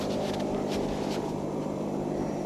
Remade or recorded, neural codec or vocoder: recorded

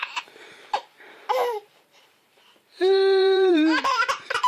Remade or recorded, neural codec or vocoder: remade, vocoder, BigVGAN v2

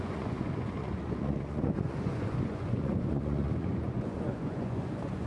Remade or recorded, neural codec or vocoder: remade, vocoder, Vocos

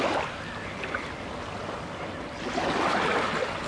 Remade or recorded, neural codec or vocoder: recorded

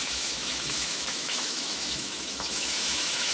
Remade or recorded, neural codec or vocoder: remade, autoencoder, DAC-VAE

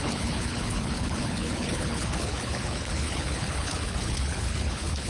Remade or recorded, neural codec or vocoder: remade, codec, HILCodec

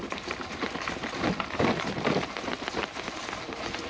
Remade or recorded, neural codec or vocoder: recorded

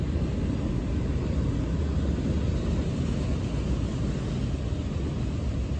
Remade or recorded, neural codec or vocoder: recorded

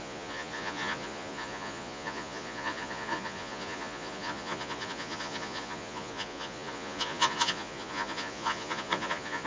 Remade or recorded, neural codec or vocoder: remade, vocoder, Vocos